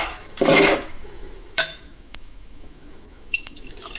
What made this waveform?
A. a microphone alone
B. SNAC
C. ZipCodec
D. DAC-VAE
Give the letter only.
D